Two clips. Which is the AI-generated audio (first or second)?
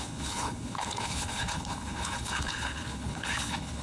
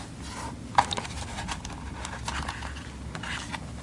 first